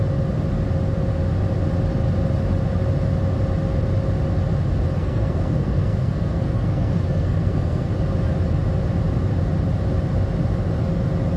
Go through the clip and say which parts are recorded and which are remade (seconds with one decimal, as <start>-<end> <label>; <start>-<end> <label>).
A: 0.0-5.0 recorded; 5.0-7.9 remade; 7.9-11.4 recorded